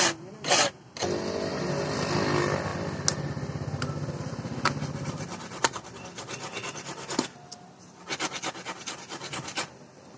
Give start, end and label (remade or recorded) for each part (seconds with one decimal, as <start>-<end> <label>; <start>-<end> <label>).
0.0-10.2 recorded

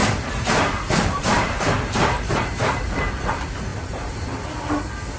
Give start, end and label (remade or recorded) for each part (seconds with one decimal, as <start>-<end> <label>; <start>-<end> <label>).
0.0-3.1 remade; 3.1-3.7 recorded; 3.7-4.2 remade; 4.2-5.2 recorded